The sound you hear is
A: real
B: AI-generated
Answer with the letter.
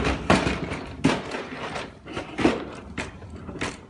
B